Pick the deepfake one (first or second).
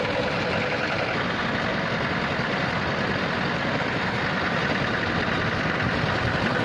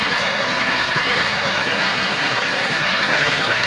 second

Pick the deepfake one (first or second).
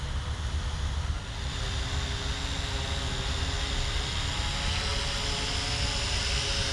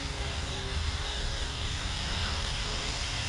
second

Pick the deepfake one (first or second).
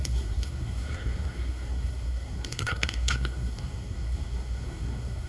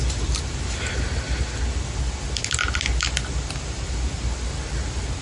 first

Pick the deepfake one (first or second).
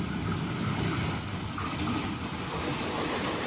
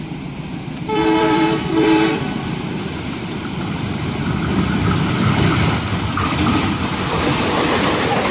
second